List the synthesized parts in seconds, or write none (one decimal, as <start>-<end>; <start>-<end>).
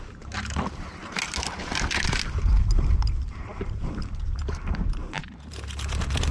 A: 0.0-1.0; 2.4-6.3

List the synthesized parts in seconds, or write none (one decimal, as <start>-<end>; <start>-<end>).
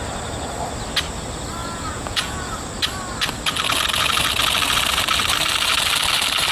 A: 1.6-2.6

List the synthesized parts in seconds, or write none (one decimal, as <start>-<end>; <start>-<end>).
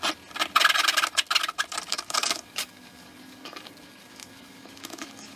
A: 1.9-5.4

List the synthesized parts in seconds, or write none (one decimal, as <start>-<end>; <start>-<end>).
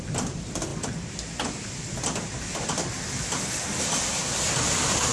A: none